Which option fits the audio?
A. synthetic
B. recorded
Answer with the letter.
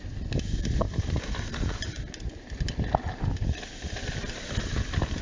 B